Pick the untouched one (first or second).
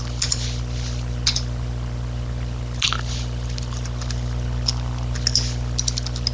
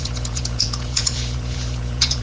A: first